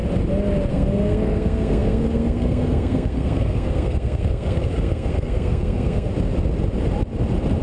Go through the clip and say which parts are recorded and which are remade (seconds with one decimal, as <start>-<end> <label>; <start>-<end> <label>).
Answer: 0.0-0.7 recorded; 0.7-6.1 remade; 6.1-7.6 recorded